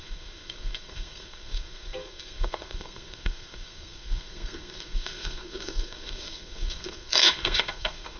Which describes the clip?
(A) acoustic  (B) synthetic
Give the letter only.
B